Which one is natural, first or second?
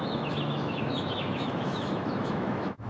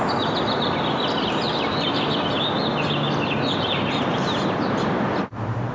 second